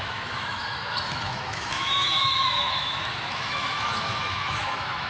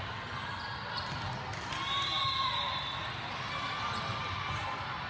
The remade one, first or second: first